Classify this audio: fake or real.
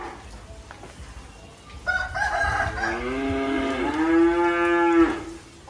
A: real